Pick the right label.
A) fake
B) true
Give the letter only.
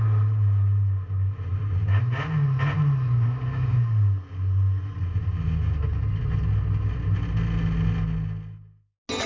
B